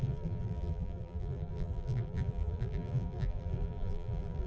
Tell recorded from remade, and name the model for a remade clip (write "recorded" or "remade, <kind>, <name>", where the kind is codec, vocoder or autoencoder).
remade, vocoder, BigVGAN v2